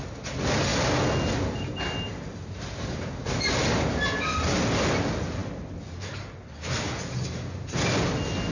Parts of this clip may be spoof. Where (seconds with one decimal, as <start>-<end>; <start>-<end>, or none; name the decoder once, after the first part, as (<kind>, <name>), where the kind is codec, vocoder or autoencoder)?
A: none